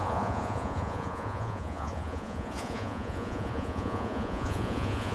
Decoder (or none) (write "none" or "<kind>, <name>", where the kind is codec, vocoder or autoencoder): vocoder, Vocos